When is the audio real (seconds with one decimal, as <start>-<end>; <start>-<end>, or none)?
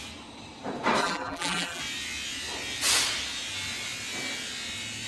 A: 0.0-1.0; 1.8-5.1